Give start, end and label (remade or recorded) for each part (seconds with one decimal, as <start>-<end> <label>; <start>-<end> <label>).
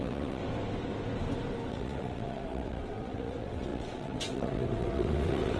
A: 0.0-0.4 remade; 0.4-1.7 recorded; 1.7-5.6 remade